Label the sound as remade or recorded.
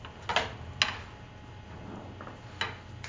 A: recorded